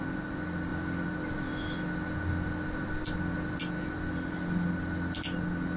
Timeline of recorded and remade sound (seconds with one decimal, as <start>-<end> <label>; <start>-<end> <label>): 0.0-5.8 recorded